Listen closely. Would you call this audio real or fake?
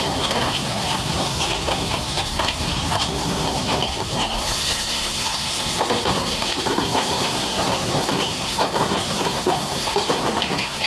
fake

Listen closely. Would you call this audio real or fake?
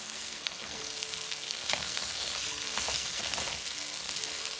fake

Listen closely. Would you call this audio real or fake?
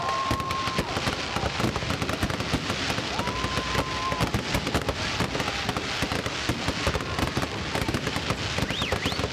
real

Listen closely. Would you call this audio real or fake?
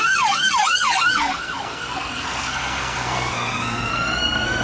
fake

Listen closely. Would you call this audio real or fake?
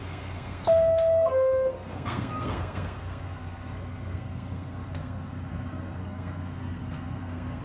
fake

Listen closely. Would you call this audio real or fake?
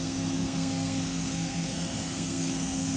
fake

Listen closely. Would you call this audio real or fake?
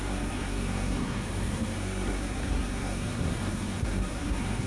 fake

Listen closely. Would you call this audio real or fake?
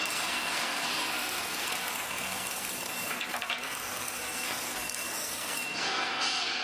fake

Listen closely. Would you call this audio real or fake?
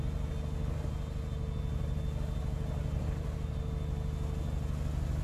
real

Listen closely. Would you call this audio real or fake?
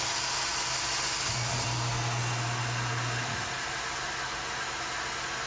real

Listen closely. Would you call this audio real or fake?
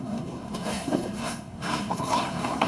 fake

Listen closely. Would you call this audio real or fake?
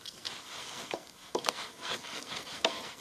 fake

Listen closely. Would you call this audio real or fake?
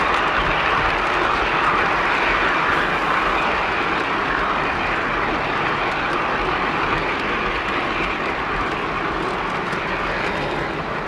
real